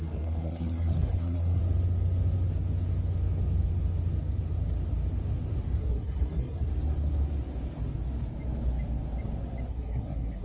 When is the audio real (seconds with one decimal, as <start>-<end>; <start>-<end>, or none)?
1.6-5.8; 6.7-9.7